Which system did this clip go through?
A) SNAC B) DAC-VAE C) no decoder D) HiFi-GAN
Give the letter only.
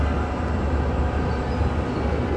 C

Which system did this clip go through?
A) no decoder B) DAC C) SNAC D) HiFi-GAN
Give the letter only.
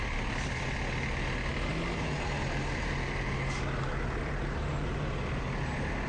A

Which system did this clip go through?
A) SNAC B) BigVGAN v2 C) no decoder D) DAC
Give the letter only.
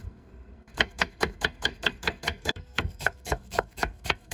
A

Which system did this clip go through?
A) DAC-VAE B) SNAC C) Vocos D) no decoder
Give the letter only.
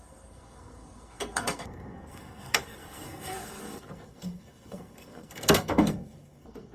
B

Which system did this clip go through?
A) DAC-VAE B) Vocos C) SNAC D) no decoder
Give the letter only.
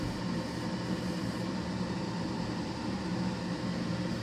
D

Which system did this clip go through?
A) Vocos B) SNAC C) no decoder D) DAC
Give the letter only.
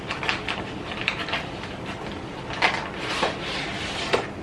C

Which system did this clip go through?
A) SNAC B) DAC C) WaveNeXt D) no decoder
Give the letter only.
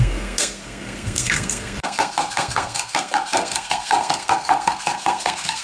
A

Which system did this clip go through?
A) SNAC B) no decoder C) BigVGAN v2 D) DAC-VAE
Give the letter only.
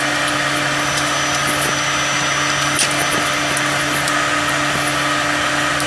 B